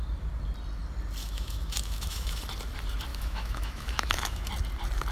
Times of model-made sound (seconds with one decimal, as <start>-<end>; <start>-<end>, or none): 1.2-2.4; 3.1-4.5